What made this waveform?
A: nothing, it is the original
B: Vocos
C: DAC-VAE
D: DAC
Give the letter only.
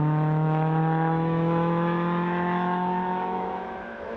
C